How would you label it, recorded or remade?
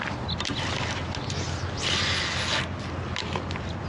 recorded